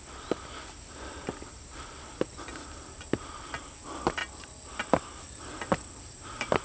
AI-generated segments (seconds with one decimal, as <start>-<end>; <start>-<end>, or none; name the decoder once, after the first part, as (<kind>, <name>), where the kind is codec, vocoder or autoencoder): none